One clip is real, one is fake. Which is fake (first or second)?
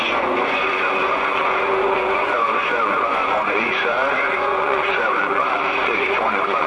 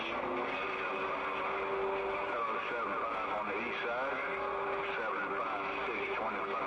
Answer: first